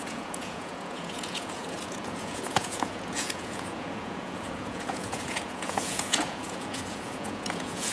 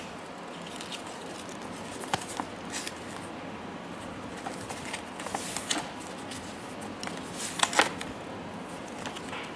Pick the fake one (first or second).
first